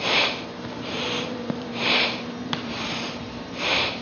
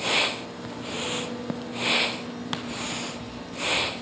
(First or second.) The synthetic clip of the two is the first